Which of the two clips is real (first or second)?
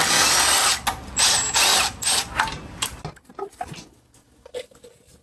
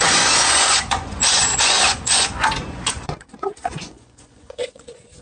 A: first